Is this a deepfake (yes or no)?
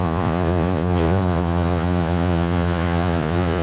yes